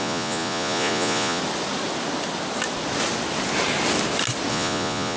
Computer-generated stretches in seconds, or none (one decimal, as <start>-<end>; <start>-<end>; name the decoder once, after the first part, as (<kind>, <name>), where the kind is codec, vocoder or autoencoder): 0.0-1.4 (vocoder, Vocos); 4.5-5.2